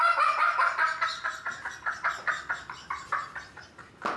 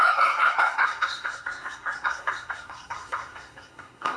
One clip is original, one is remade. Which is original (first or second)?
first